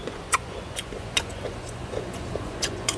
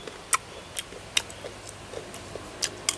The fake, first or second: first